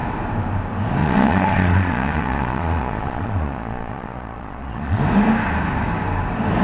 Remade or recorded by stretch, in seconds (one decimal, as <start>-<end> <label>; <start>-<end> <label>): 0.0-1.0 recorded; 1.0-5.0 remade; 5.0-6.6 recorded